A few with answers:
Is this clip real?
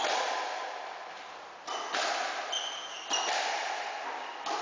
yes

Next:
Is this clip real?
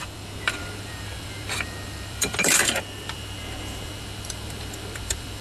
no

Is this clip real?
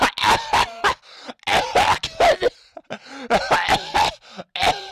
yes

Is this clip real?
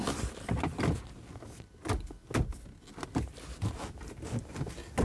yes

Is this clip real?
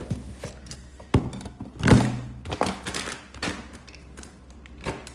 yes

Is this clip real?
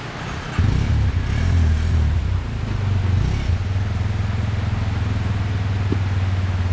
yes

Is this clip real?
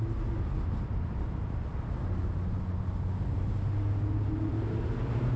yes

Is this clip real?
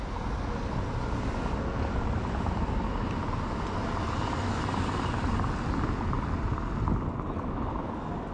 yes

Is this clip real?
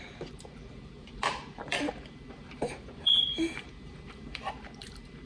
no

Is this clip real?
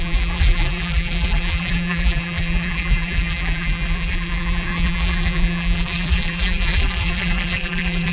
no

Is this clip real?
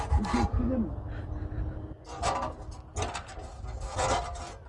yes